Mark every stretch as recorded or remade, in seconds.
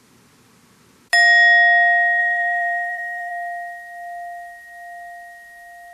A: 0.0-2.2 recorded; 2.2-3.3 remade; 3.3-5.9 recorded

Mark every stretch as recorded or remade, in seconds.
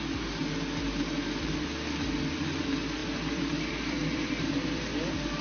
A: 0.0-3.0 recorded; 3.0-4.8 remade; 4.8-5.4 recorded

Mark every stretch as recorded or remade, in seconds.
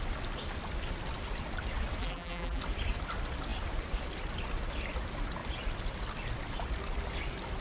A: 0.0-2.0 recorded; 2.0-2.6 remade; 2.6-7.6 recorded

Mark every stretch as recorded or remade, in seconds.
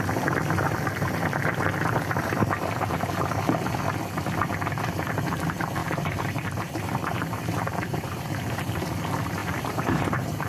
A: 0.0-5.8 recorded; 5.8-9.0 remade; 9.0-9.4 recorded; 9.4-10.5 remade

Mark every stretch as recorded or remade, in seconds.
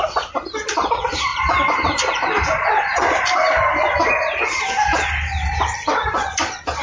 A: 0.0-1.3 recorded; 1.3-4.6 remade; 4.6-6.8 recorded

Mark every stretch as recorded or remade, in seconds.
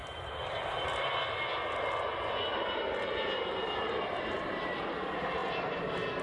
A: 0.0-1.4 remade; 1.4-2.5 recorded; 2.5-4.7 remade; 4.7-6.2 recorded